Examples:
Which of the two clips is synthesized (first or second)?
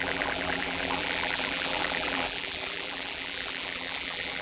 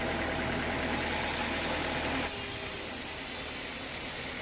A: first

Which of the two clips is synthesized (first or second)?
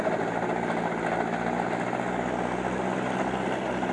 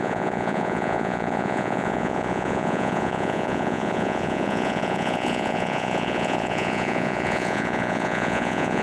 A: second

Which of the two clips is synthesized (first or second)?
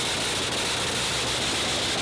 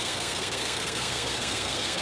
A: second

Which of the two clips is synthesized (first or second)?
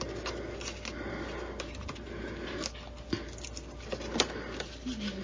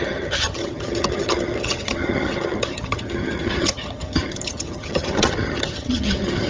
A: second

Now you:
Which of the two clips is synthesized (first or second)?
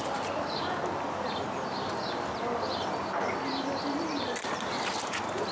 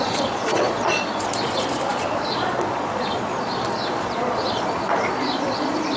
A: second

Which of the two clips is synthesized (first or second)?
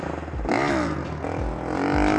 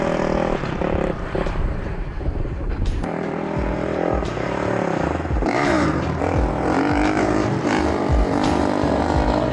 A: second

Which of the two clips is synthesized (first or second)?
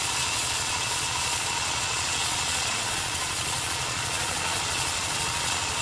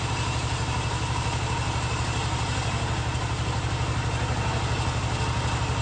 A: first